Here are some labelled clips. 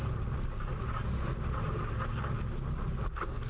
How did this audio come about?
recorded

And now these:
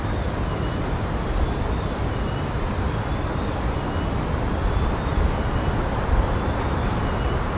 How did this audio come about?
recorded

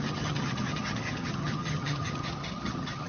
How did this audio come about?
remade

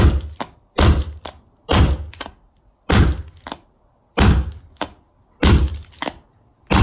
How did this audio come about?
recorded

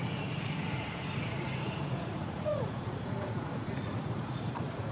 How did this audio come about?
remade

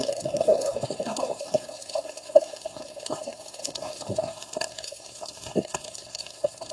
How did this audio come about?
remade